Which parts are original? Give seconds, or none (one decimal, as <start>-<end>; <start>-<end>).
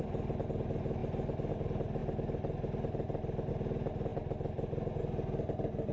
0.0-5.9